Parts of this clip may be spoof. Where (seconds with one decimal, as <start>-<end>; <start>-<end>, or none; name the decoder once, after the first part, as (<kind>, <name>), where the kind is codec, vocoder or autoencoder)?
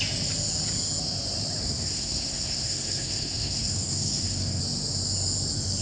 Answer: 1.6-4.6 (codec, SNAC)